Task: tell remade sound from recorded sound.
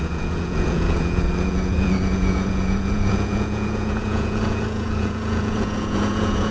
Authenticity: remade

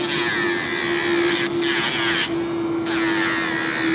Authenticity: recorded